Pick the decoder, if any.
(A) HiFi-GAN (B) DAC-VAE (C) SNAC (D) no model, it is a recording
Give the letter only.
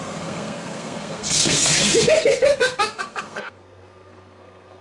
C